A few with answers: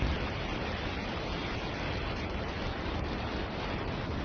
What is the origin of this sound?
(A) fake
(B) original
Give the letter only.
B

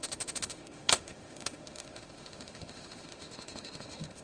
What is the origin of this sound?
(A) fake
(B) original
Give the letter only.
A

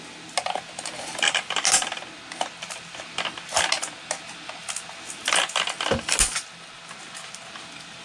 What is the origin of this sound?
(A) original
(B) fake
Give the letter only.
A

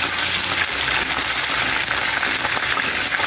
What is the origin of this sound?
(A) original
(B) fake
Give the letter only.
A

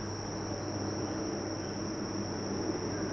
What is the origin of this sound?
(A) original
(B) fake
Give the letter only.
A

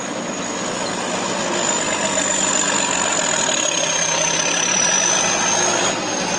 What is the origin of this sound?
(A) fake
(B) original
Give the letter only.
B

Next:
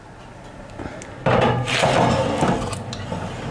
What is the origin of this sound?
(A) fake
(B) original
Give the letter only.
B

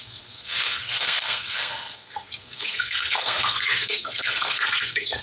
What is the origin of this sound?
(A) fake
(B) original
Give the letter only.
A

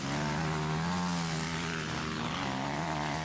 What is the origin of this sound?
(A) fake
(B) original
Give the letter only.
B